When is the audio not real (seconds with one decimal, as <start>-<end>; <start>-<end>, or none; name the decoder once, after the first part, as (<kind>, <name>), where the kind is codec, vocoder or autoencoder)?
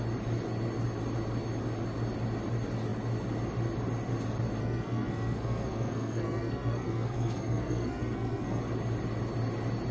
4.6-8.6 (codec, SNAC)